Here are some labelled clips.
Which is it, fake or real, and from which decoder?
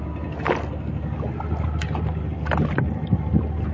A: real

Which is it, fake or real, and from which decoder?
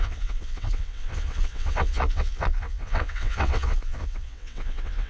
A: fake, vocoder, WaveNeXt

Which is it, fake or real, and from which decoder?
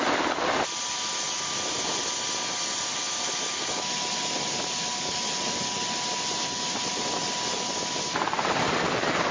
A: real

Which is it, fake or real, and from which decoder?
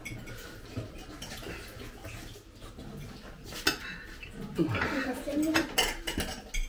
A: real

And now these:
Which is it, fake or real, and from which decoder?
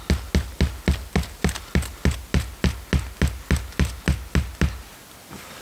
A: real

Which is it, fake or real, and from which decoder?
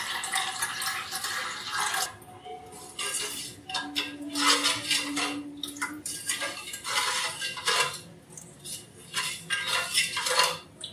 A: real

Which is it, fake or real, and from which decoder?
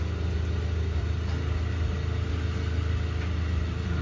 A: real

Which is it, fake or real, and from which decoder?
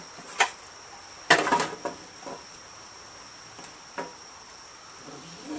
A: real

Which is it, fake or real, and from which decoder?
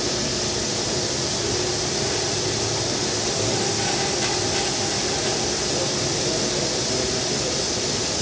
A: real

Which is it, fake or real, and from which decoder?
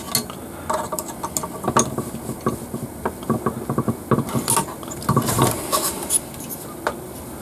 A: real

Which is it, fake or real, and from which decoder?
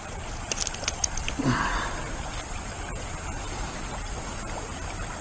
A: real